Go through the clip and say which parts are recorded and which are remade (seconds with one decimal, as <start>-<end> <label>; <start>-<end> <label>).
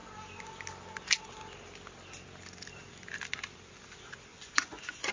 0.0-4.3 recorded; 4.3-5.1 remade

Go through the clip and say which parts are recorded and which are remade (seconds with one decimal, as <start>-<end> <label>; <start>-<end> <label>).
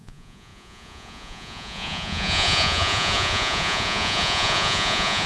0.0-5.3 remade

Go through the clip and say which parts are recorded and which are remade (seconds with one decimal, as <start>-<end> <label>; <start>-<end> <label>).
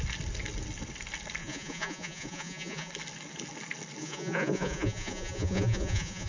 0.0-1.4 recorded; 1.4-2.9 remade; 2.9-4.0 recorded; 4.0-6.3 remade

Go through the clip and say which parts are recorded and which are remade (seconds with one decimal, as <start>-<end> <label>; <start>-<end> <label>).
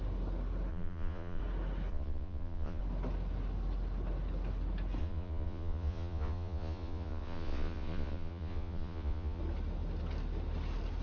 0.0-0.7 recorded; 0.7-1.4 remade; 1.4-1.9 recorded; 1.9-2.8 remade; 2.8-5.0 recorded; 5.0-9.4 remade; 9.4-11.0 recorded